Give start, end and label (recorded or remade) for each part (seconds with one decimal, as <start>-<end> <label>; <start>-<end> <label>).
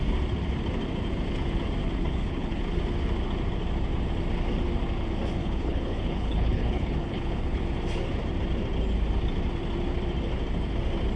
0.0-1.8 recorded; 1.8-2.6 remade; 2.6-5.4 recorded; 5.4-7.6 remade; 7.6-11.2 recorded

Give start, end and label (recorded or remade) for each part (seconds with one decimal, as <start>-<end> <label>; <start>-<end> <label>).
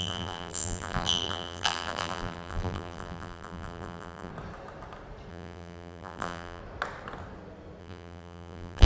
0.0-4.3 remade; 4.3-5.3 recorded; 5.3-6.6 remade; 6.6-7.8 recorded; 7.8-8.8 remade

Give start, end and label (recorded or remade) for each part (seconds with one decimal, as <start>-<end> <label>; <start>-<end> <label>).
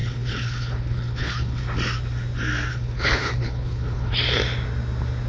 0.0-1.6 remade; 1.6-2.7 recorded; 2.7-4.2 remade; 4.2-5.3 recorded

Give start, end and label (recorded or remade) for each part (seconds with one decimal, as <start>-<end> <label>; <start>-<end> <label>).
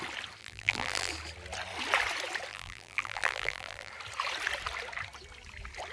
0.0-0.4 recorded; 0.4-1.1 remade; 1.1-2.5 recorded; 2.5-3.9 remade; 3.9-5.9 recorded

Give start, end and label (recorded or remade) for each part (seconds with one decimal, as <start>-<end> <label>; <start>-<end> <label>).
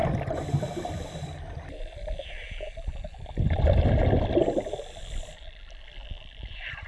0.0-3.7 remade; 3.7-6.0 recorded; 6.0-6.9 remade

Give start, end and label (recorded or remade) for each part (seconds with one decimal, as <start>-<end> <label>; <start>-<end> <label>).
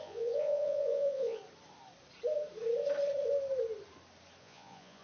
0.0-1.4 remade; 1.4-4.4 recorded; 4.4-5.0 remade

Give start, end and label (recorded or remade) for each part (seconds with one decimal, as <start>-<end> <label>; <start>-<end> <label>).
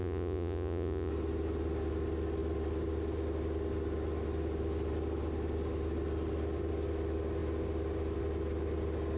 0.0-1.1 remade; 1.1-9.2 recorded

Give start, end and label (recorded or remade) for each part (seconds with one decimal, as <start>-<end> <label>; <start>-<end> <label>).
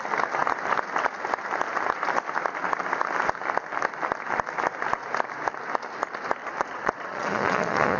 0.0-6.4 recorded; 6.4-8.0 remade